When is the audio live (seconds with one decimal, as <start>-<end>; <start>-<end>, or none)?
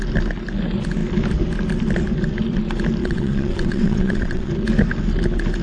0.0-3.0; 4.5-5.6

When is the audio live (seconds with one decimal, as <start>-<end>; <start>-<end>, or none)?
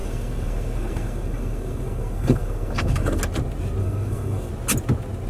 3.2-3.8; 4.5-5.3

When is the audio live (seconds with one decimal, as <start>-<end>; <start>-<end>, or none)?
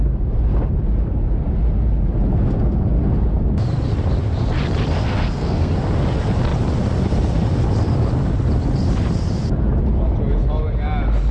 0.0-5.0; 5.7-11.3